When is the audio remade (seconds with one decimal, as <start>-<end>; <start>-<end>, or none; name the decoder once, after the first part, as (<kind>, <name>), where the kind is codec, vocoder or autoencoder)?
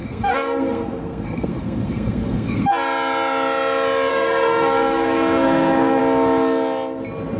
0.0-2.7 (codec, SNAC); 4.1-6.0